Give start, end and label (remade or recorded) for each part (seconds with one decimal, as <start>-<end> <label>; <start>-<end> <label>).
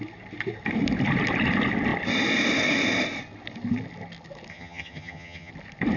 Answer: 0.0-4.5 recorded; 4.5-5.5 remade; 5.5-6.0 recorded